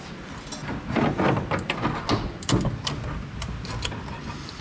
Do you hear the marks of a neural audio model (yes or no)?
no